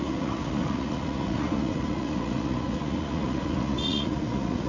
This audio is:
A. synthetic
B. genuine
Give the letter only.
A